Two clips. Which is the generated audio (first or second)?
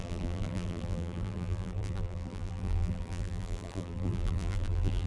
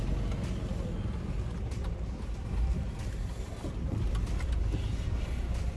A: first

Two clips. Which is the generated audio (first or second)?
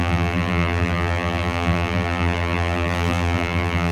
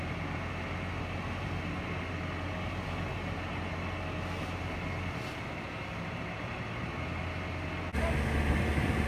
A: first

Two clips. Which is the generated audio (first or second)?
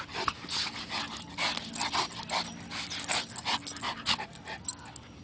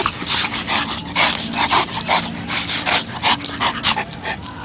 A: second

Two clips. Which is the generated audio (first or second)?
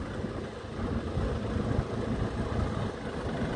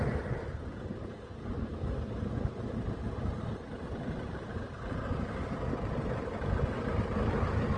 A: second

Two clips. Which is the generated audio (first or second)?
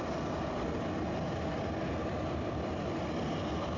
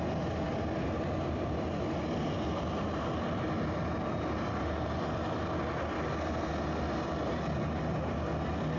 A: first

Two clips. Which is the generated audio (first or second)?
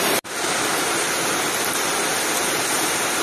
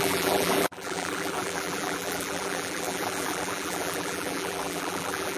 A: second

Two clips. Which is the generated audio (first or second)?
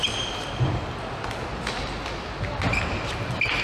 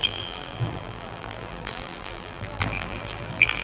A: second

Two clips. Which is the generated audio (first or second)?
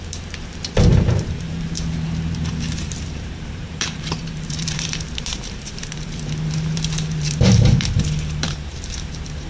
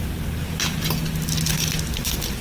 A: first